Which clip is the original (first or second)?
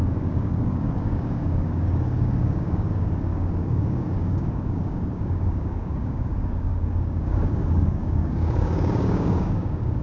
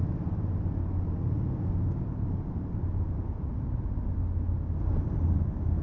second